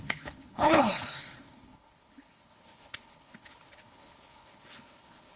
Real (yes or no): no